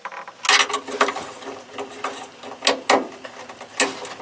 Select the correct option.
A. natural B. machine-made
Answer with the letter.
A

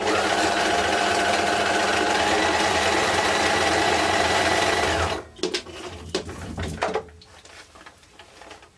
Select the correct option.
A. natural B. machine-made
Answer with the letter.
A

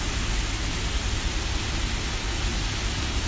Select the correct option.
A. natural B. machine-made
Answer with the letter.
A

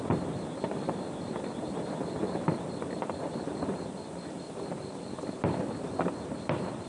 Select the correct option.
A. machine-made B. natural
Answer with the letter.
A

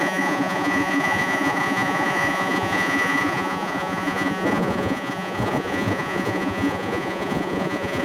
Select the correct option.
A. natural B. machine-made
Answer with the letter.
B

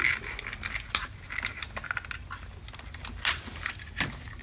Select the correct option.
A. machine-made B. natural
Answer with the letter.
B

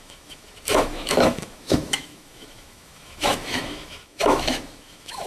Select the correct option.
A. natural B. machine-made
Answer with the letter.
B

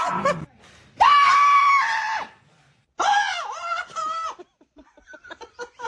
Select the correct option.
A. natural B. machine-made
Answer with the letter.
B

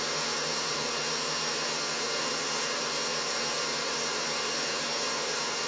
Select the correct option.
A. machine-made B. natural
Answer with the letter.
B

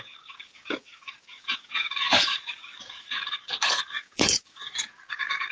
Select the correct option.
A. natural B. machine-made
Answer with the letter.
B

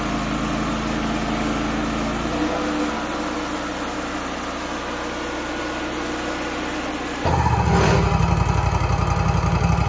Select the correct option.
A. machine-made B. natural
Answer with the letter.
B